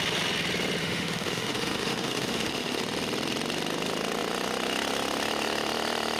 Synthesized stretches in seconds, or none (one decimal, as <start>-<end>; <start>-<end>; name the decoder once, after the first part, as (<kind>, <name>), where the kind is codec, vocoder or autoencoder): 0.8-2.8 (autoencoder, DAC-VAE)